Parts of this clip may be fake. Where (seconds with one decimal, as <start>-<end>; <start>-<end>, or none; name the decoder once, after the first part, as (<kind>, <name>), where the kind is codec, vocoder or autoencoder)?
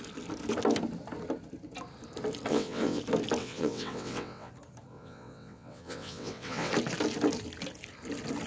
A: 2.5-3.0 (vocoder, WaveNeXt); 3.4-4.5; 4.9-6.7